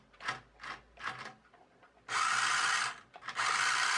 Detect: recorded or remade recorded